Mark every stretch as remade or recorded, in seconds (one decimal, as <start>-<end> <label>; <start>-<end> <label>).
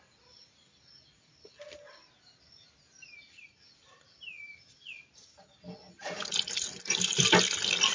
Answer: 0.0-7.9 recorded